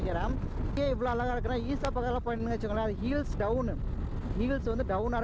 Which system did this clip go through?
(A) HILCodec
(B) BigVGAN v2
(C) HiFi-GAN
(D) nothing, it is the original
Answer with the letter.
D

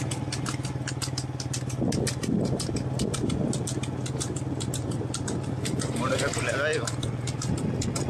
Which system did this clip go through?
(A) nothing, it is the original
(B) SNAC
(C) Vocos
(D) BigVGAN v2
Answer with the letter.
A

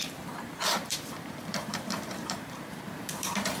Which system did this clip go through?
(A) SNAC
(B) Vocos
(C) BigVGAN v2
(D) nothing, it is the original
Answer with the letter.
C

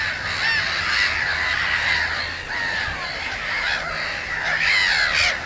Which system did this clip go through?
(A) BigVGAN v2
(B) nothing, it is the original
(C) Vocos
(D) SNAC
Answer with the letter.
B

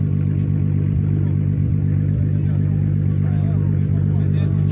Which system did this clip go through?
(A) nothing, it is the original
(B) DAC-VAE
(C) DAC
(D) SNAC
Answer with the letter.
A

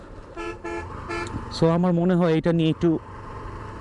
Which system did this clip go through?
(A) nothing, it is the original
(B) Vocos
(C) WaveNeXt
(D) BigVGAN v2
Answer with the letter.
D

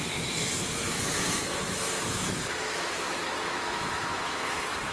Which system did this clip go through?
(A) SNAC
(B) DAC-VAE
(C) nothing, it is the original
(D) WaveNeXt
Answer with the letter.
B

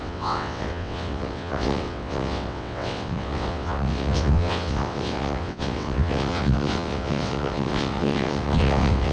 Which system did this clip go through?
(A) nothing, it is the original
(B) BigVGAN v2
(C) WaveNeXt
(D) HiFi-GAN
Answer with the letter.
C